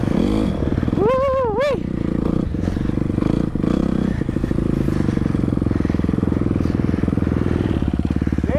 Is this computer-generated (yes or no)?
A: no